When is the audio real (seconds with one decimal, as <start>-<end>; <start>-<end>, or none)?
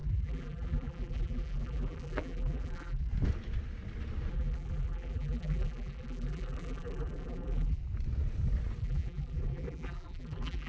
3.1-4.3; 7.8-8.8